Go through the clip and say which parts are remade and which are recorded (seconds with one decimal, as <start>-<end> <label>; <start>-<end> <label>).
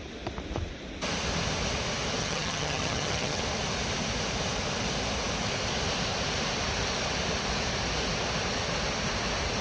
0.0-2.2 recorded; 2.2-3.4 remade; 3.4-9.6 recorded